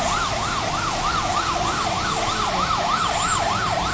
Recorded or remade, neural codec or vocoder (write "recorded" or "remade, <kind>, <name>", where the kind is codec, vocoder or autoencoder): recorded